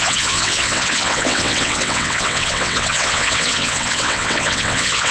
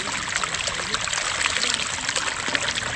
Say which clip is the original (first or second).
second